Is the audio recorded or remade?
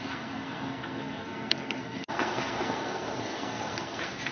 remade